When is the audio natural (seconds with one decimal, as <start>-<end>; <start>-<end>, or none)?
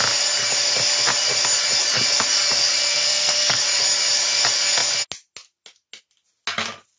0.0-2.8; 3.6-7.0